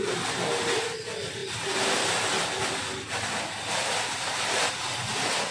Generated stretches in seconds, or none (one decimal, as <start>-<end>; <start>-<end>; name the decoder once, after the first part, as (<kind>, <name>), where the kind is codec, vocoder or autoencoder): none